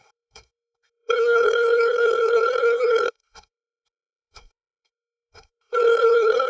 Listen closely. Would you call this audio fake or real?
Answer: fake